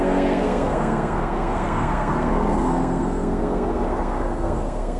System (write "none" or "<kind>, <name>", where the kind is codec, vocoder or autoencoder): codec, SNAC